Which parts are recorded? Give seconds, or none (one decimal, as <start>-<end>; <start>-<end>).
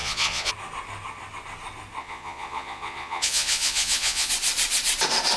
0.5-2.0; 4.3-5.4